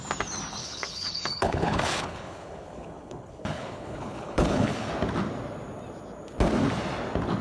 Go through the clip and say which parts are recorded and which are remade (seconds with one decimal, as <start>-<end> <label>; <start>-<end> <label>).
0.0-0.6 recorded; 0.6-4.9 remade; 4.9-7.4 recorded